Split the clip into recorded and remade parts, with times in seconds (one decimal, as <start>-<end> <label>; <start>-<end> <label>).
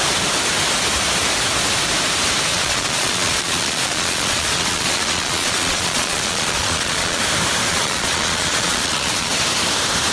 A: 0.0-2.5 recorded; 2.5-7.2 remade; 7.2-7.7 recorded; 7.7-9.3 remade; 9.3-10.1 recorded